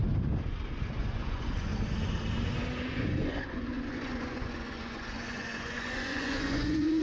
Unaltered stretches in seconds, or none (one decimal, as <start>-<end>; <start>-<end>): 0.0-1.0; 1.7-2.9